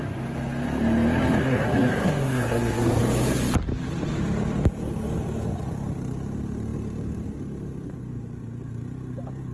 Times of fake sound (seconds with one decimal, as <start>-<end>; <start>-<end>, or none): 1.4-3.0